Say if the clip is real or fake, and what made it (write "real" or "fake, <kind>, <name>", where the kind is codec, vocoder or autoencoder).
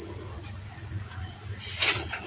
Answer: fake, vocoder, Vocos